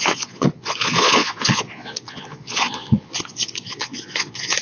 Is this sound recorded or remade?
remade